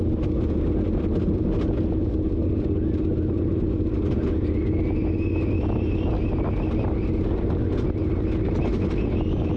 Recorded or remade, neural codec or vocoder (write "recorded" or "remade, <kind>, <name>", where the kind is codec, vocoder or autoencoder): recorded